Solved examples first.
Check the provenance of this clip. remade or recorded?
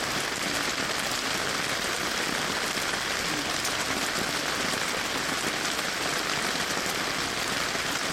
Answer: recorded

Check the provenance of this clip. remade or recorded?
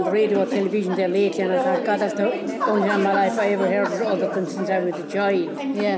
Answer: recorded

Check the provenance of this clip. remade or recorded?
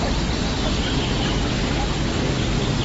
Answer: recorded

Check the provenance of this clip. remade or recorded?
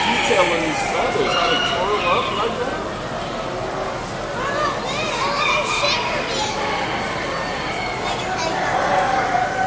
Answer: recorded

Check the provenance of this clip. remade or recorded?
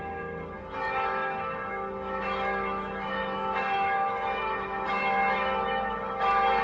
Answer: remade